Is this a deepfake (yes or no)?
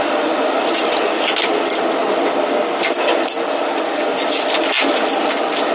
no